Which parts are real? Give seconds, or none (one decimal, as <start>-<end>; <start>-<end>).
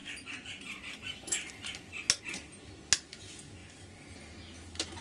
0.0-5.0